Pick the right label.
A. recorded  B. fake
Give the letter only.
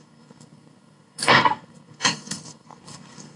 B